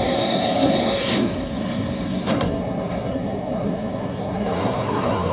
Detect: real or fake fake